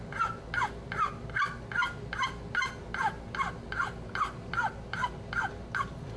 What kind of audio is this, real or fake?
real